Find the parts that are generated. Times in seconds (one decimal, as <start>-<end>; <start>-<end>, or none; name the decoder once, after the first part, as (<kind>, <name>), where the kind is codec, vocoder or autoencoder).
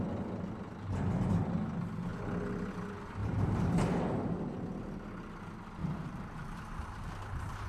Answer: 3.2-3.7 (vocoder, BigVGAN v2); 5.8-6.9